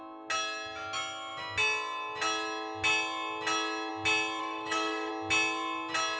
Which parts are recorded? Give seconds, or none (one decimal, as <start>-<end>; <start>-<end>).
0.0-4.4; 5.1-6.2